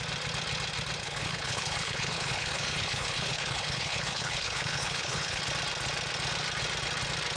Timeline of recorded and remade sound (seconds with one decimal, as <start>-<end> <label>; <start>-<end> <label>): 0.0-1.0 recorded; 1.0-5.4 remade; 5.4-7.4 recorded